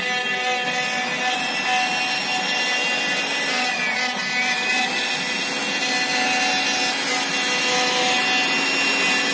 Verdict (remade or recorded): recorded